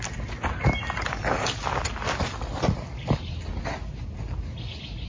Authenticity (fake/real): real